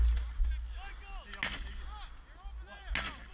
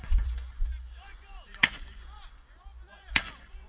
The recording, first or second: first